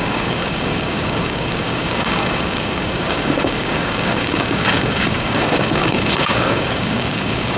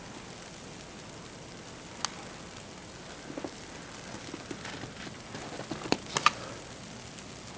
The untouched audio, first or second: second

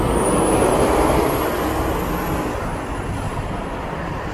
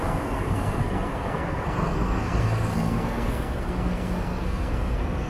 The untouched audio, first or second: first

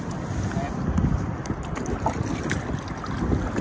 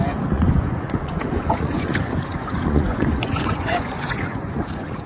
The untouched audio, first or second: first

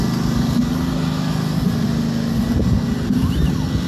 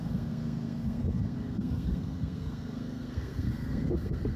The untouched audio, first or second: first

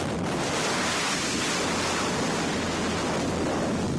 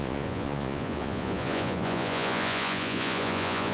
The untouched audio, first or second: first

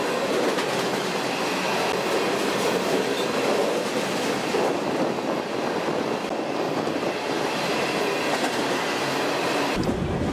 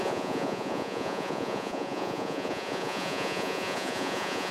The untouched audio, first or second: first